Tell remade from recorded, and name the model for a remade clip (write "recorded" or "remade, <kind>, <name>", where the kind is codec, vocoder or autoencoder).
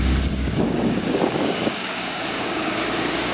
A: remade, codec, DAC